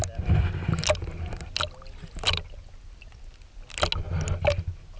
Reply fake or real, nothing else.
real